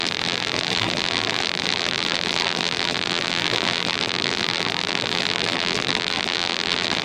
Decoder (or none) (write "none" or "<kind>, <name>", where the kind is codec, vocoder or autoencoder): vocoder, BigVGAN v2